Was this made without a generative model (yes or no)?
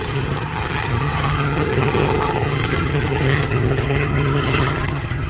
no